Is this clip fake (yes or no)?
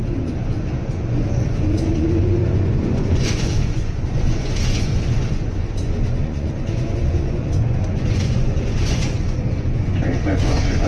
yes